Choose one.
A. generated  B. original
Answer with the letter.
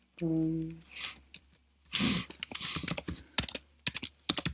B